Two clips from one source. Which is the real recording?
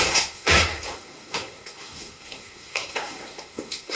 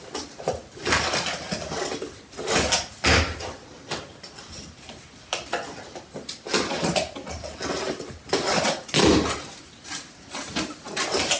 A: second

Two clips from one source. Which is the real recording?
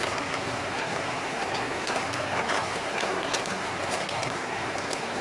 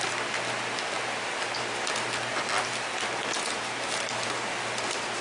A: second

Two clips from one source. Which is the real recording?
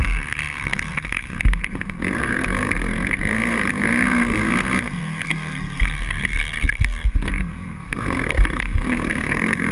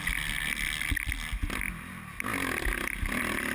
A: second